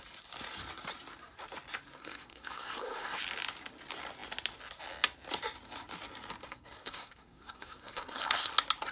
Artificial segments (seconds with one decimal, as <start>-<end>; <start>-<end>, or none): 2.0-3.2; 6.4-8.5